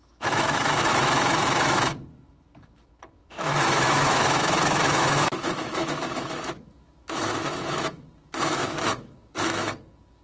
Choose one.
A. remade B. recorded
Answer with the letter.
A